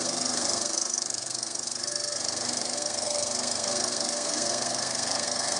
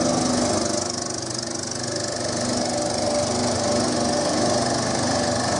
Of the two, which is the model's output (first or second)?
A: first